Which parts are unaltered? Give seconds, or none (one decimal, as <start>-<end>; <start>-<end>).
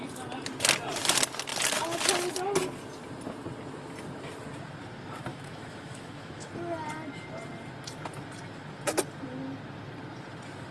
0.0-5.3; 6.5-10.7